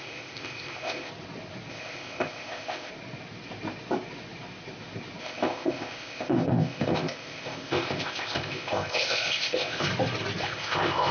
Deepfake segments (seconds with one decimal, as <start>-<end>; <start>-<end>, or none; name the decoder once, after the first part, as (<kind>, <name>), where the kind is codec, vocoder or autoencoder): 0.0-1.1 (codec, ZipCodec); 1.7-2.9; 5.2-9.9; 10.4-11.1